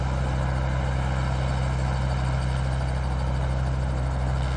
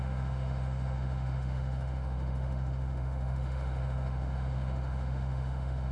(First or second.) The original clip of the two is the first